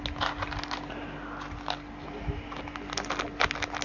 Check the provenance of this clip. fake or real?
real